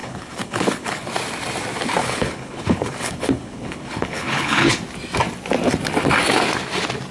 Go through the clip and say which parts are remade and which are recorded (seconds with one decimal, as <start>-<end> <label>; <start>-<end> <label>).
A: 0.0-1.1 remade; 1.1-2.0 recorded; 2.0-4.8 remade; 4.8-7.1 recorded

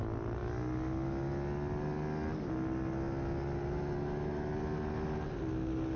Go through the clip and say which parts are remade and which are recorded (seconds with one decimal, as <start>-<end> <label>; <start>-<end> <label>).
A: 0.0-6.0 recorded

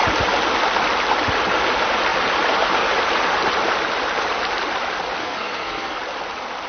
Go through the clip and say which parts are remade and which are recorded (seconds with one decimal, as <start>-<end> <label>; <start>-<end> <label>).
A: 0.0-5.2 recorded; 5.2-6.0 remade; 6.0-6.7 recorded

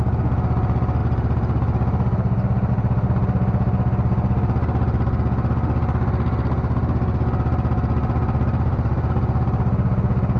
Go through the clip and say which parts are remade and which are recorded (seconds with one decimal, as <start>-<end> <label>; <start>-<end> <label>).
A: 0.0-8.0 recorded; 8.0-9.4 remade; 9.4-10.4 recorded

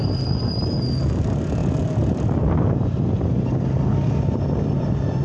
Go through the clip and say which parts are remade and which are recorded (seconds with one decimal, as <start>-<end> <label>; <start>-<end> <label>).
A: 0.0-5.2 recorded

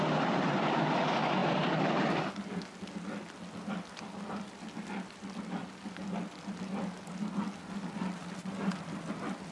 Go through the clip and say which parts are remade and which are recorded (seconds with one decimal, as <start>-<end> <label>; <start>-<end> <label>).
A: 0.0-9.5 recorded